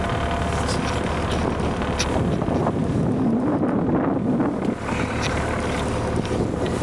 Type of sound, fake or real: real